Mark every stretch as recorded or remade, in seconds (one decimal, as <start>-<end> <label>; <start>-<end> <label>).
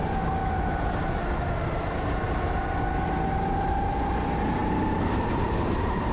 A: 0.0-6.1 recorded